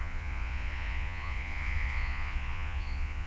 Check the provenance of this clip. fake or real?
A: fake